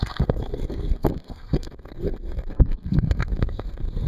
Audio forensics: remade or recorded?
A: remade